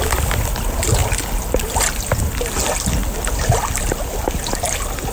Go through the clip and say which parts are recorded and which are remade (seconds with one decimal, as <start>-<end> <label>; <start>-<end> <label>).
0.0-5.1 recorded